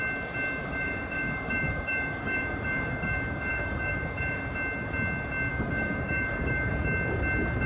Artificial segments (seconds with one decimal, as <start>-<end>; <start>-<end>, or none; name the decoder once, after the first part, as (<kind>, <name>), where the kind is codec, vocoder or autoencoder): 0.6-4.4 (codec, DAC); 5.5-6.7